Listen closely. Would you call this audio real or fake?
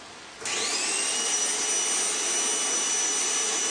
real